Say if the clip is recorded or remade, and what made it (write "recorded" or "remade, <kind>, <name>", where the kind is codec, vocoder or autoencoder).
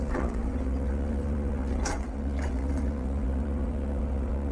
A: remade, vocoder, WaveNeXt